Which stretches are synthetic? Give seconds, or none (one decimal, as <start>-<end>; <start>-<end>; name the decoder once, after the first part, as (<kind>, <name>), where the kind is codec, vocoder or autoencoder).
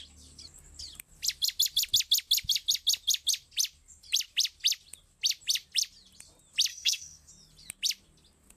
6.7-7.3 (codec, SNAC)